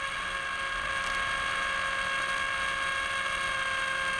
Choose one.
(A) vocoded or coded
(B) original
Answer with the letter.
B